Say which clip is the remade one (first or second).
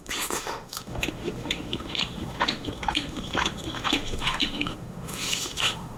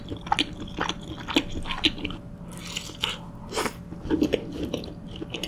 first